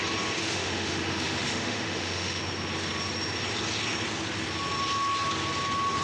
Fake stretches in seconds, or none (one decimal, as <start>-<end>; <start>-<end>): 0.4-2.4

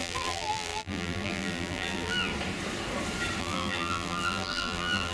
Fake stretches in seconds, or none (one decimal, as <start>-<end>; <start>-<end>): 0.0-2.3; 3.4-5.1